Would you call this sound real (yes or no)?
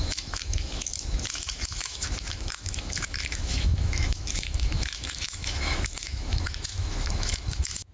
no